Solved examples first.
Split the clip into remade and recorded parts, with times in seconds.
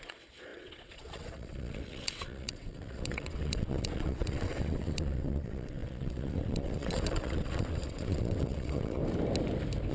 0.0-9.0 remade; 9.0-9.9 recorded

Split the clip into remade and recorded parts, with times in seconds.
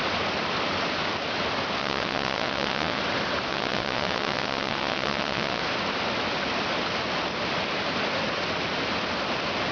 0.0-1.8 recorded; 1.8-3.0 remade; 3.0-3.5 recorded; 3.5-5.6 remade; 5.6-9.7 recorded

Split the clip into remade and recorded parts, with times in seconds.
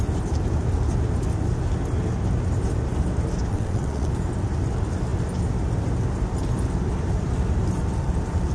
0.0-3.5 recorded; 3.5-4.1 remade; 4.1-8.5 recorded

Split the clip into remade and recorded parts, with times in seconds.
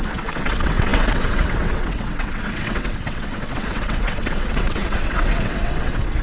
0.0-6.2 remade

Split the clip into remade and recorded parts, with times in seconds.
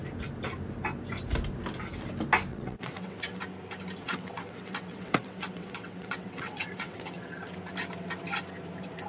0.0-2.5 recorded; 2.5-3.4 remade; 3.4-4.0 recorded; 4.0-7.4 remade; 7.4-9.1 recorded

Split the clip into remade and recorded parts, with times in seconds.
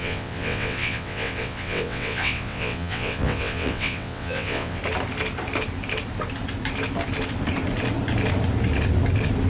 0.0-4.8 remade; 4.8-9.5 recorded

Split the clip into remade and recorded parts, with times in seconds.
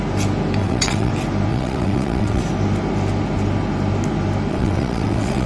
0.0-0.6 recorded; 0.6-1.1 remade; 1.1-1.5 recorded; 1.5-2.4 remade; 2.4-4.5 recorded; 4.5-5.5 remade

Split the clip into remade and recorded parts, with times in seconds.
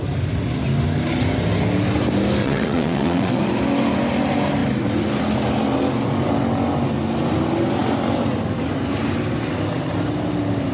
0.0-2.4 recorded; 2.4-3.4 remade; 3.4-10.7 recorded